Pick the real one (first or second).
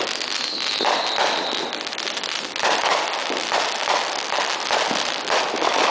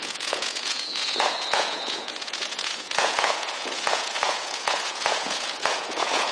first